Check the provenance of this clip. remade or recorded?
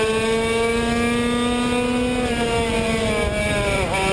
recorded